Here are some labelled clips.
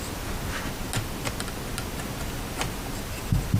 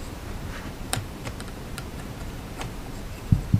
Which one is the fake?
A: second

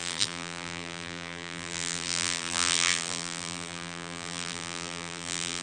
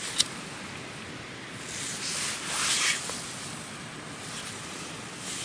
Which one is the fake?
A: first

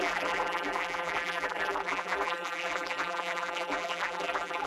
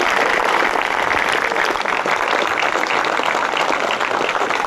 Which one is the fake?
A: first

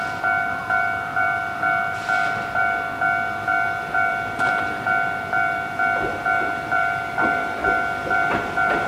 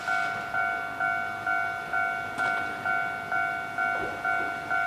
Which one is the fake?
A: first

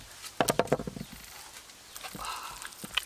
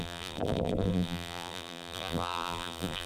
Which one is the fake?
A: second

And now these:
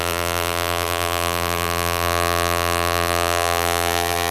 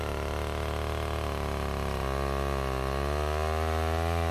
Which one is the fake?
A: first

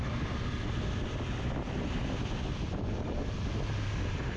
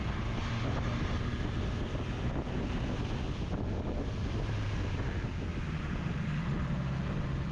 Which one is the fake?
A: first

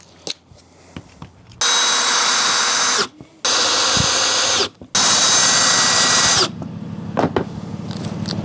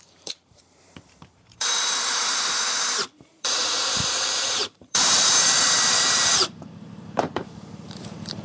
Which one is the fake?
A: second